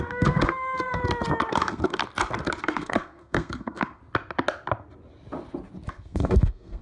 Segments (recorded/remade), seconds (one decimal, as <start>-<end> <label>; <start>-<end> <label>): 0.0-1.0 remade; 1.0-1.5 recorded; 1.5-2.0 remade; 2.0-2.6 recorded; 2.6-4.0 remade; 4.0-5.9 recorded; 5.9-6.8 remade

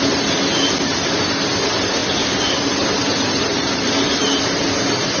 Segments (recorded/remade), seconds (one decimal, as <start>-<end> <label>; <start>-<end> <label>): 0.0-5.2 recorded